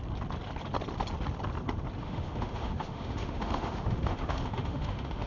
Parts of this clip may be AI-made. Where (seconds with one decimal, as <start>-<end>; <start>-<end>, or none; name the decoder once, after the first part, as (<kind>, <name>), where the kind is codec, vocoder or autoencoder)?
2.0-5.3 (autoencoder, DAC-VAE)